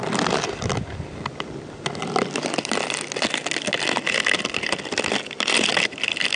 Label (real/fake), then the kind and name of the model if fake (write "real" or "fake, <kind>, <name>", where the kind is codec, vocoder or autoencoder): real